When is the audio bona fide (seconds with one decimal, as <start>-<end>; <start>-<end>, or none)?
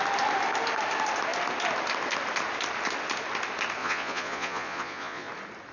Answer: 0.0-3.8; 5.3-5.7